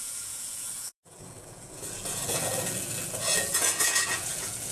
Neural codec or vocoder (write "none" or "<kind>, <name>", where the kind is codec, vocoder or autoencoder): vocoder, Vocos